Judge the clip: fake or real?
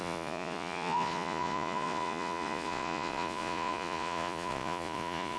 fake